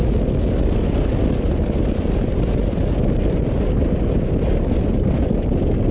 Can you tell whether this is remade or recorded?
recorded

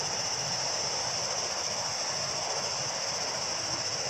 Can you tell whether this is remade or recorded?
recorded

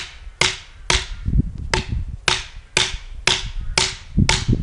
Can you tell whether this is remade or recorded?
recorded